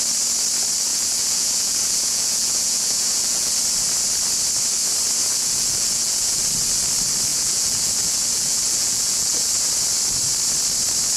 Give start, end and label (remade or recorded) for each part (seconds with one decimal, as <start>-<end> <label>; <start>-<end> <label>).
0.0-0.9 recorded; 0.9-3.5 remade; 3.5-5.2 recorded; 5.2-6.4 remade; 6.4-7.3 recorded; 7.3-9.5 remade; 9.5-11.2 recorded